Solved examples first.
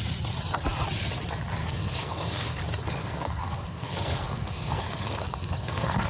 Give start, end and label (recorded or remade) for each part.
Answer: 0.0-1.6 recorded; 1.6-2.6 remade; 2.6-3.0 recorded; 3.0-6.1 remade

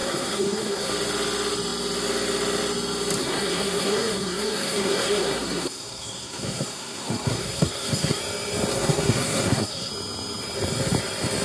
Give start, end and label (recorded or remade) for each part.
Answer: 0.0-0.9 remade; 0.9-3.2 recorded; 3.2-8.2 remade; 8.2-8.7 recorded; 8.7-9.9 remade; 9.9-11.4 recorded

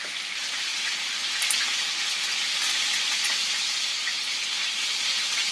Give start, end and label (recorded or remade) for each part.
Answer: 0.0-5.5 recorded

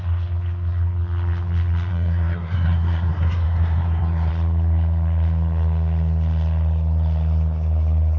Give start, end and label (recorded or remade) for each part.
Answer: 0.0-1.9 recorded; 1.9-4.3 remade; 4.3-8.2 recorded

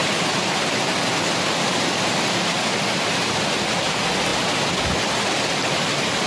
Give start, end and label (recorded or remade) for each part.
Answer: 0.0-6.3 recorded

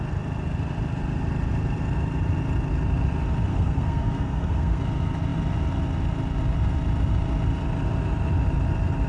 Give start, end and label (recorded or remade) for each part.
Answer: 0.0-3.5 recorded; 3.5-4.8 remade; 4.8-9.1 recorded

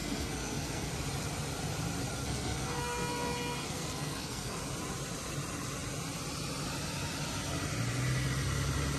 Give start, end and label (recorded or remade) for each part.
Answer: 0.0-0.9 remade; 0.9-2.2 recorded; 2.2-4.6 remade; 4.6-9.0 recorded